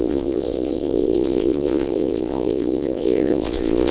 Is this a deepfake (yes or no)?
yes